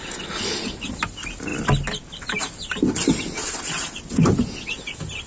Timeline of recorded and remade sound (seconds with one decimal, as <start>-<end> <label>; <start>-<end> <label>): 0.0-5.3 recorded